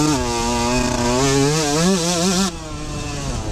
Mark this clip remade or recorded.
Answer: recorded